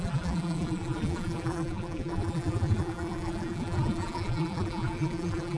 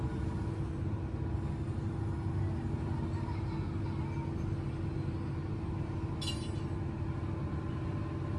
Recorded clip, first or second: second